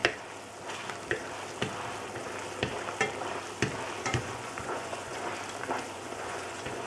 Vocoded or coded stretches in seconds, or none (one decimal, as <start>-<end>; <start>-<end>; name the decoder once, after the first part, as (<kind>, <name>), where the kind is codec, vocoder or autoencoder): 4.0-5.3 (vocoder, Vocos); 5.8-6.9